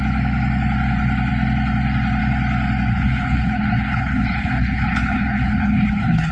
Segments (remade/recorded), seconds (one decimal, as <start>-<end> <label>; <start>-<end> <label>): 0.0-2.9 recorded; 2.9-6.3 remade